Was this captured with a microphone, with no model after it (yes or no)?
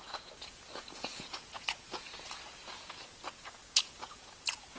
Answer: no